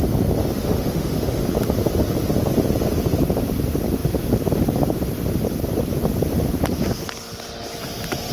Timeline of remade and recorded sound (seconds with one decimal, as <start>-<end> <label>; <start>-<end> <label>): 0.0-0.6 recorded; 0.6-1.4 remade; 1.4-8.3 recorded